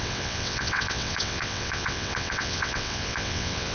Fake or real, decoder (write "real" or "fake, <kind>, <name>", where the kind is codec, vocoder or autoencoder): fake, vocoder, WaveNeXt